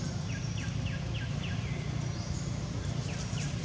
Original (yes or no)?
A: yes